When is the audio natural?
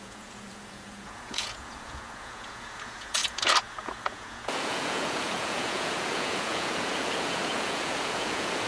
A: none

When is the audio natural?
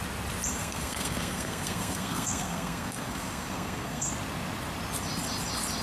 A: 0.0-0.6; 4.1-5.8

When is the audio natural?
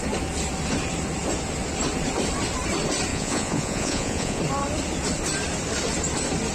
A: 0.0-3.1; 4.4-6.5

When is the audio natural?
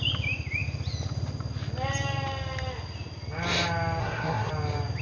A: 0.0-4.0; 4.5-5.0